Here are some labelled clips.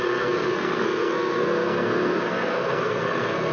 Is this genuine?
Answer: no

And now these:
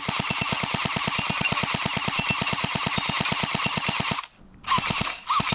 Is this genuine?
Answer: yes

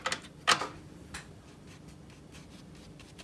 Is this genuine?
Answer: yes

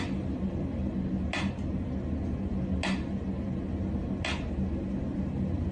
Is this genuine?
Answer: yes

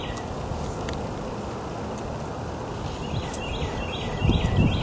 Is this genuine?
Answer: yes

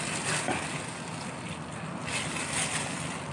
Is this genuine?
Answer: yes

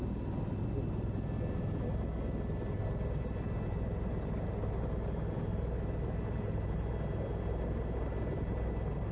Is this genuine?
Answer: yes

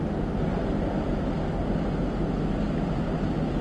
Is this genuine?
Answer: yes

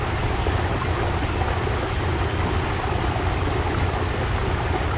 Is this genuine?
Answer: yes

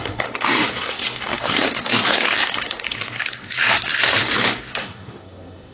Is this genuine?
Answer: no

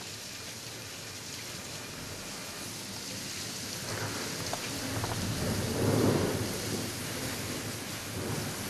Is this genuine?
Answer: yes